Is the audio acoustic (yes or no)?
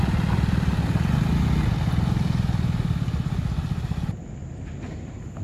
yes